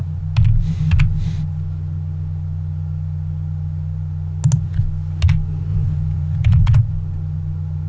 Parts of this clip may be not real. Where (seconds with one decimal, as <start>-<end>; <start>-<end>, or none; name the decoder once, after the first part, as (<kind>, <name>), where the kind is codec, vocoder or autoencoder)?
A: 5.7-6.8 (vocoder, Vocos)